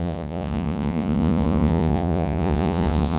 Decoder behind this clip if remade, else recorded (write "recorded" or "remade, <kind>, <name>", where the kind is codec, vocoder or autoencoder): remade, vocoder, Vocos